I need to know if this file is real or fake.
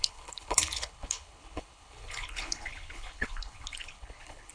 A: fake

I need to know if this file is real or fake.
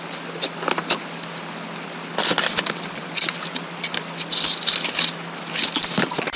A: real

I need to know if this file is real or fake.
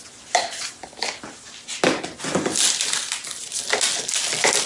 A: real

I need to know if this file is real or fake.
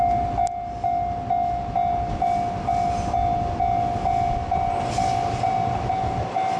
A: real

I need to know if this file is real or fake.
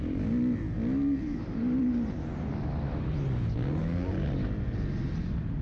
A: real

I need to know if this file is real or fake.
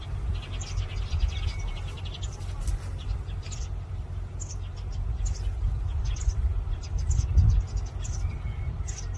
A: real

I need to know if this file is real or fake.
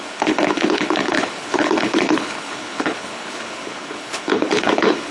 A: fake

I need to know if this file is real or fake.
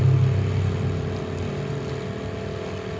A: real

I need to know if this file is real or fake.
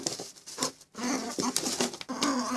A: real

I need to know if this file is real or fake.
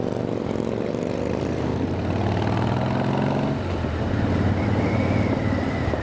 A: real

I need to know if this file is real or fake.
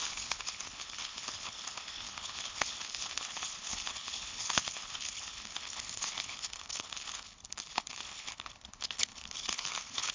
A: fake